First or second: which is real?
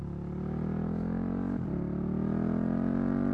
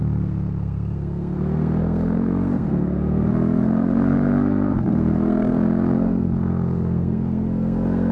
first